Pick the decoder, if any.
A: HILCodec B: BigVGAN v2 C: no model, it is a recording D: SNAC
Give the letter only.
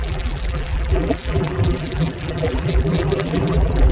B